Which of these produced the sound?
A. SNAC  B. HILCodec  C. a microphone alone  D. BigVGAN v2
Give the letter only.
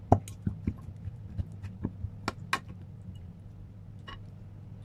C